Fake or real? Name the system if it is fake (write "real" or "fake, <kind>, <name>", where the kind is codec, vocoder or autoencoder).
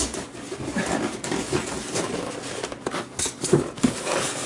fake, codec, DAC